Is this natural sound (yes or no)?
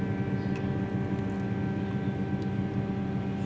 yes